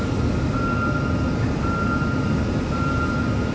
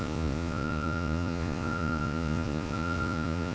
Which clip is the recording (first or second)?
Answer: first